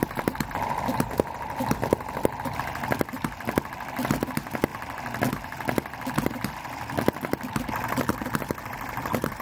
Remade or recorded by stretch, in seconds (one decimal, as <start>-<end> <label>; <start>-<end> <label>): 0.0-4.7 remade; 4.7-5.3 recorded; 5.3-9.4 remade